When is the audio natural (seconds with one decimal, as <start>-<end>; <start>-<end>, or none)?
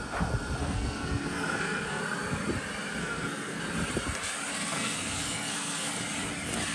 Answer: 0.0-0.6; 2.0-3.0; 3.6-4.5; 5.9-6.7